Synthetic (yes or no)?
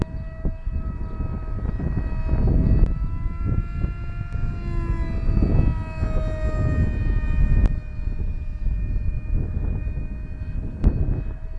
no